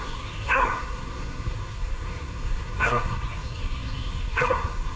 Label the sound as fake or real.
fake